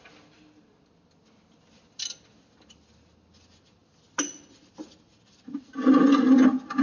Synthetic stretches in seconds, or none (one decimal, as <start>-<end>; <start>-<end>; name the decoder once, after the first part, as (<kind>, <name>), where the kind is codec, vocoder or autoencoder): none